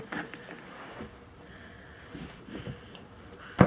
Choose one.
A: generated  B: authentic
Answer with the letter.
B